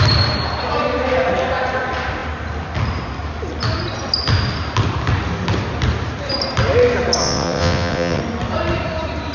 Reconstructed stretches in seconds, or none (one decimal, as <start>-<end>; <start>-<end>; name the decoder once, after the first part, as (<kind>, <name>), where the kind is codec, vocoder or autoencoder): 7.2-8.2 (vocoder, WaveNeXt)